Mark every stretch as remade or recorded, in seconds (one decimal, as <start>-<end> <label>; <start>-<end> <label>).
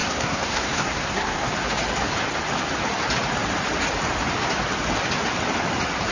0.0-1.5 remade; 1.5-6.1 recorded